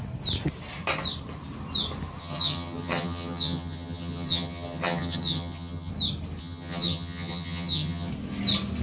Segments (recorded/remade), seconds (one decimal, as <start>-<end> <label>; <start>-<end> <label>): 0.0-2.2 recorded; 2.2-5.9 remade; 5.9-6.4 recorded; 6.4-8.1 remade; 8.1-8.8 recorded